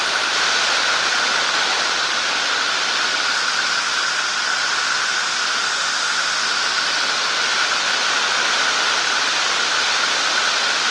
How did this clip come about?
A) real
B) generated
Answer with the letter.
A